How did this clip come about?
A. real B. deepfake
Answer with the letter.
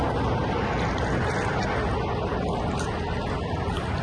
A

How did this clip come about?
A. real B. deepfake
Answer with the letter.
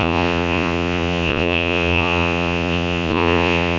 B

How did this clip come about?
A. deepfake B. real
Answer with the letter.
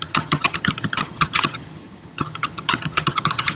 A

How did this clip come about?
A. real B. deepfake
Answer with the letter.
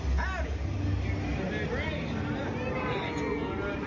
A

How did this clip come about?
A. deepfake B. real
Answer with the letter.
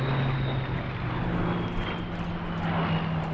B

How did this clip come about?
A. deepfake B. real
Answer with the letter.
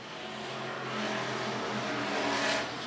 B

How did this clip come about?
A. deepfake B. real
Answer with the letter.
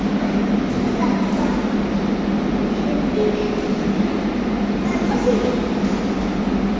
B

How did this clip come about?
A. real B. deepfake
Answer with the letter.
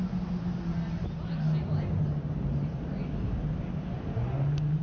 A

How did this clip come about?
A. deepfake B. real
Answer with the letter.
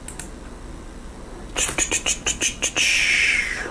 B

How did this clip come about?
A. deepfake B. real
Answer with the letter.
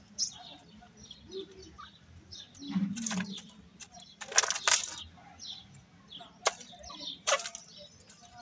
B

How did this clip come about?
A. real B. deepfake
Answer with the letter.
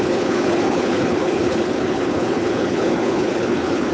B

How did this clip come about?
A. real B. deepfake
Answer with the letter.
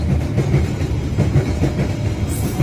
A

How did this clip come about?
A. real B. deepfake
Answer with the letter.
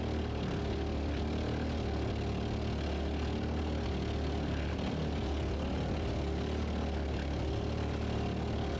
A